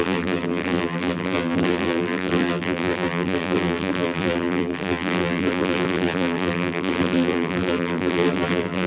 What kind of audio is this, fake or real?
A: fake